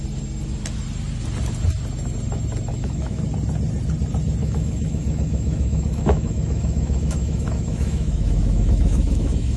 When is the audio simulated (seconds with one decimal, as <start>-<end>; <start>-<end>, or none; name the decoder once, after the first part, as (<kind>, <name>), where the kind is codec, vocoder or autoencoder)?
2.7-3.2 (autoencoder, DAC-VAE); 4.4-9.6